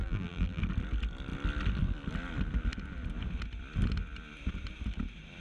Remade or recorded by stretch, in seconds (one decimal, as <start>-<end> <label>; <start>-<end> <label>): 0.0-0.6 remade; 0.6-5.4 recorded